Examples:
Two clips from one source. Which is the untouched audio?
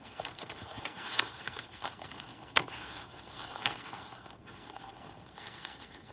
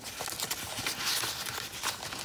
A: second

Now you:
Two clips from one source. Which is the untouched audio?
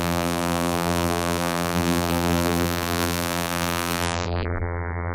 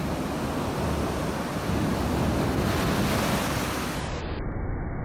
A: second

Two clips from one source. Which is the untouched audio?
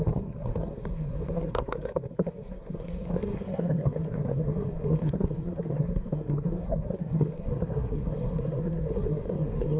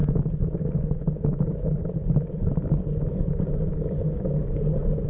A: second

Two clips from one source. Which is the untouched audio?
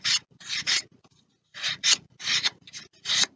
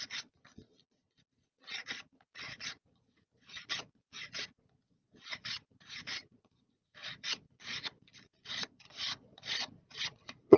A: first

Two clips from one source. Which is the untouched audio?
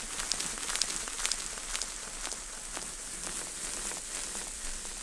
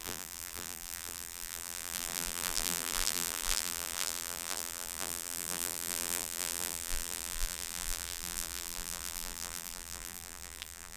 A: first